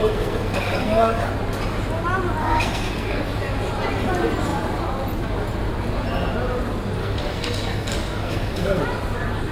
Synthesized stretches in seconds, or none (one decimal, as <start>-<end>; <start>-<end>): 0.0-1.3; 2.4-3.2; 7.0-8.8